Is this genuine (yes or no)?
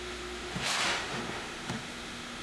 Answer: no